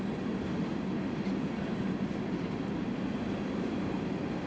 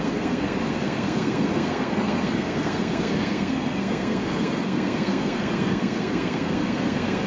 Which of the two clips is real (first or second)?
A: first